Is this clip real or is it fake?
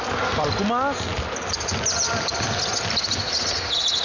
real